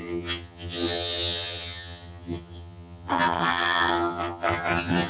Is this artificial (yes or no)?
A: yes